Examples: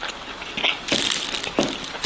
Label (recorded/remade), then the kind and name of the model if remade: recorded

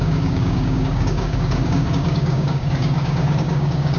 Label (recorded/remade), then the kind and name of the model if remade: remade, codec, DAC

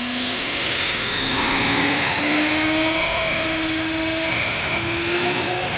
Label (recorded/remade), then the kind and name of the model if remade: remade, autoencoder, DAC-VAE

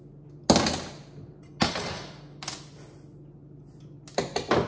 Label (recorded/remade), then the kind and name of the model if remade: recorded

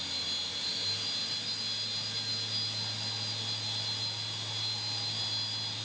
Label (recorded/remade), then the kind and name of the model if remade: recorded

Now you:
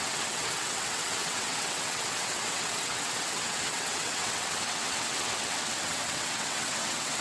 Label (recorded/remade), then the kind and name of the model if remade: remade, vocoder, WaveNeXt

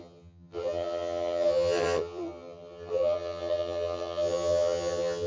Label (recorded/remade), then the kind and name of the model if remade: remade, vocoder, HiFi-GAN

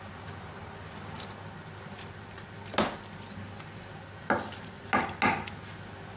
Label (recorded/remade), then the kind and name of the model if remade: recorded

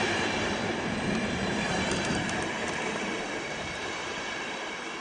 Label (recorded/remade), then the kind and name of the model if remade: remade, vocoder, BigVGAN v2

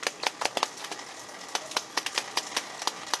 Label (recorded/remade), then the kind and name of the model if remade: recorded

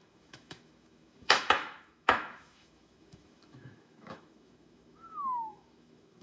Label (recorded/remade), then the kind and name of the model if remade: remade, autoencoder, DAC-VAE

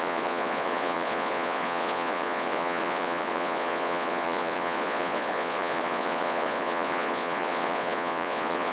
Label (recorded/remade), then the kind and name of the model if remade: remade, vocoder, Vocos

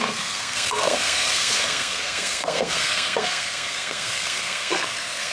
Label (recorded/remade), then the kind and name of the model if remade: remade, codec, SNAC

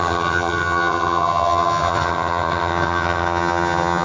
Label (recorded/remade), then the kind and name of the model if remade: remade, vocoder, HiFi-GAN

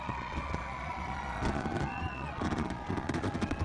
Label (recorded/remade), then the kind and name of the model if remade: remade, vocoder, Vocos